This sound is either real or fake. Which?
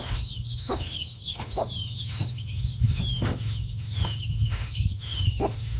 fake